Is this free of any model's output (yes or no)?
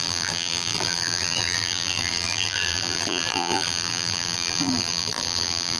no